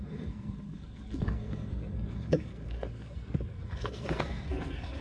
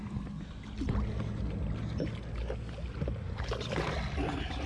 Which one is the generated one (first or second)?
first